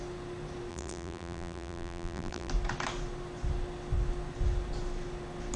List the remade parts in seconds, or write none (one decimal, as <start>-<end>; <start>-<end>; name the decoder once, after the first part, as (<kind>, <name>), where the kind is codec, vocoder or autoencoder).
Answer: 0.7-2.5 (vocoder, BigVGAN v2)